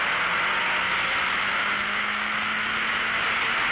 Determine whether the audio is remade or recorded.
recorded